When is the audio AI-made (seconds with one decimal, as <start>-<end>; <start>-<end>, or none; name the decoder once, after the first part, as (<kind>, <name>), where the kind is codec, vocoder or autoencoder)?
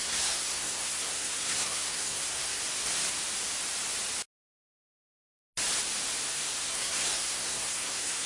0.0-2.6 (codec, SNAC); 4.7-5.4; 6.3-8.3